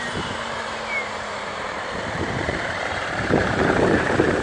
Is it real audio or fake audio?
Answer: fake